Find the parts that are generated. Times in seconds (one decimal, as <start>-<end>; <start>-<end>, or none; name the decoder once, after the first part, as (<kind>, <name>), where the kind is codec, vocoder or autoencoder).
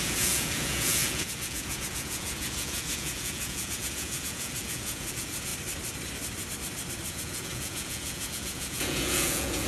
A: 0.0-5.5 (vocoder, Vocos); 7.1-9.7